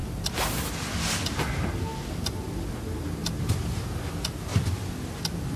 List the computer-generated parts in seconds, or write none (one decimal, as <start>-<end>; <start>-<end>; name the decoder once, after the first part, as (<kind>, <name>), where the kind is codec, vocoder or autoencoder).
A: none